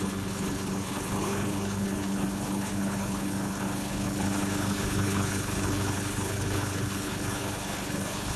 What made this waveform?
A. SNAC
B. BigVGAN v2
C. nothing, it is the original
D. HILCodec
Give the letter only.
D